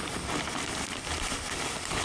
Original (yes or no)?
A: yes